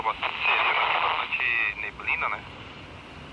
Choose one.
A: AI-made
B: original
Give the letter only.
B